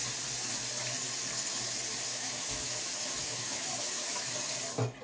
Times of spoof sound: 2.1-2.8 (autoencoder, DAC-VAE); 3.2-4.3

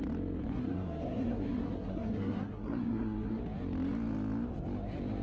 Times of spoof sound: 0.4-3.4 (codec, SNAC)

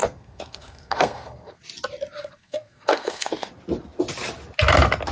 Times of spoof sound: 0.0-1.6 (codec, SNAC); 2.2-3.5

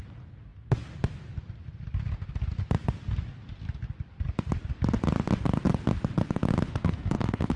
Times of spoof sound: 6.7-7.6 (codec, SNAC)

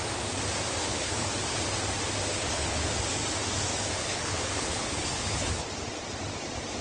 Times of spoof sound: 0.8-1.3 (codec, HILCodec); 2.3-3.0; 4.0-5.5